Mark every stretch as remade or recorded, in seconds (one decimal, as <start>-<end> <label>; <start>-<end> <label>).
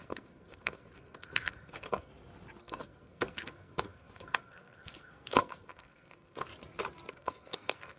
0.0-2.1 remade; 2.1-2.6 recorded; 2.6-6.5 remade; 6.5-7.1 recorded; 7.1-8.0 remade